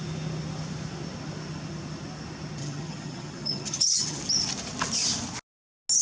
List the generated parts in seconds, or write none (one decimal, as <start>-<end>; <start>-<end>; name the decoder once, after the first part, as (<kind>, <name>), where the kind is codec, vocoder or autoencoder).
2.6-4.2 (vocoder, HiFi-GAN)